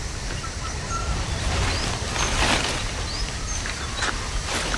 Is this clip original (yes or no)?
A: no